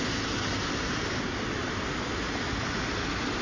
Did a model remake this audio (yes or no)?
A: no